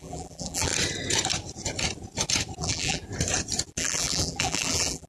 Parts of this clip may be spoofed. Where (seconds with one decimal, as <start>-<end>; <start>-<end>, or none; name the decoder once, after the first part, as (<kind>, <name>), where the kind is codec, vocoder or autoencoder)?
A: 0.0-0.7 (vocoder, BigVGAN v2); 2.6-3.0; 3.7-5.1